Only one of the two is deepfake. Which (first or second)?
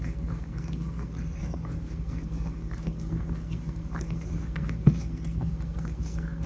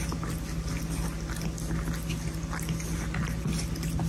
first